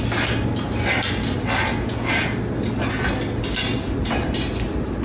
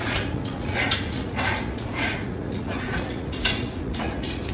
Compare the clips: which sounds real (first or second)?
first